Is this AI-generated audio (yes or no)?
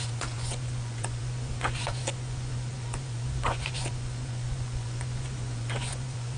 yes